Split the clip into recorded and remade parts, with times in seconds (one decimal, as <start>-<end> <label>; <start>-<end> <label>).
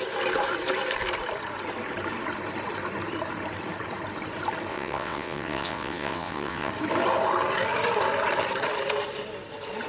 0.0-4.7 recorded; 4.7-6.7 remade; 6.7-9.9 recorded